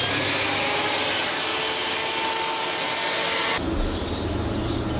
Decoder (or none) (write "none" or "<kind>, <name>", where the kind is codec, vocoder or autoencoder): none